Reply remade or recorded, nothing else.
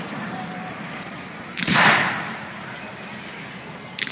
remade